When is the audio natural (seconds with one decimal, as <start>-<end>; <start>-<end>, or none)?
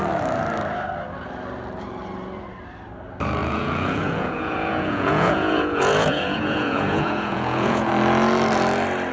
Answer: 0.0-3.4; 7.9-9.1